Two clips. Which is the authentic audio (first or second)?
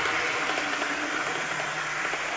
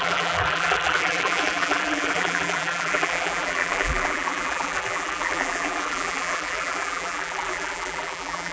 first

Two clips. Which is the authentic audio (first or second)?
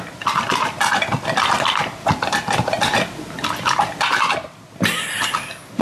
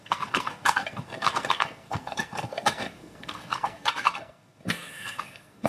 first